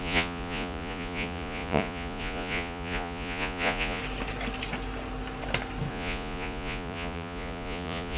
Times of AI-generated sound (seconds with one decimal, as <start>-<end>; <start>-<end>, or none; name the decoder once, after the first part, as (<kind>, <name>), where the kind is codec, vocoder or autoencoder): 0.0-4.0 (vocoder, Vocos); 5.9-8.2